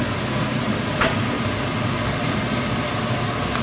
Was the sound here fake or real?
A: real